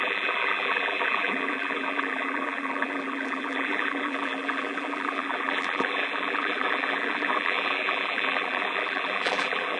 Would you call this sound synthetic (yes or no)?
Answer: yes